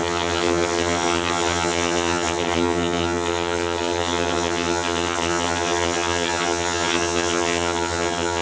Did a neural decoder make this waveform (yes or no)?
yes